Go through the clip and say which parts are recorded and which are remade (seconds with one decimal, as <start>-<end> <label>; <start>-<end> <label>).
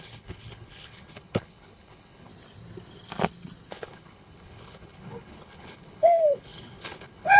0.0-2.3 remade; 2.3-3.7 recorded; 3.7-7.4 remade